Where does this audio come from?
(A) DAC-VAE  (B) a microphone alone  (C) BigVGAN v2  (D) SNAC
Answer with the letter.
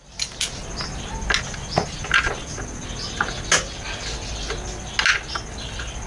B